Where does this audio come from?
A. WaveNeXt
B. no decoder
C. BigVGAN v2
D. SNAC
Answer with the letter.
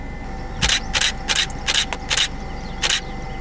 B